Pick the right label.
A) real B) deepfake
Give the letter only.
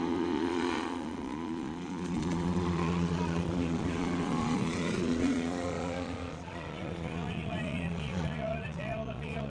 B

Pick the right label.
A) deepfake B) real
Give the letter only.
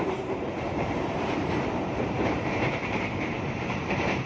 A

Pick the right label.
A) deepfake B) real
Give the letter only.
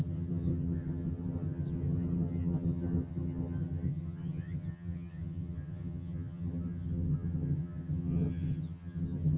A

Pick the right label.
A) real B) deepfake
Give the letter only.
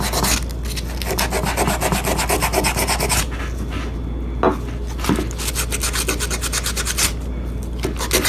A